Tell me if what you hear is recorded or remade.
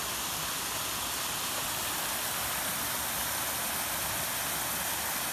recorded